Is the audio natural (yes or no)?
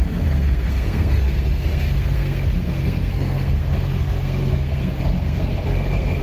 no